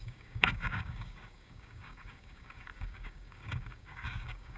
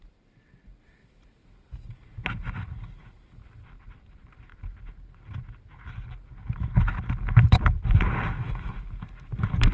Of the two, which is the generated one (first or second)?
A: first